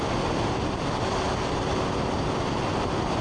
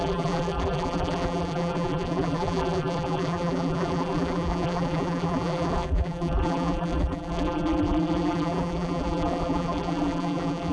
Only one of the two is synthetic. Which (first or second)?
second